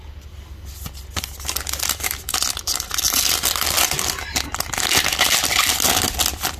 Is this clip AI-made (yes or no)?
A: no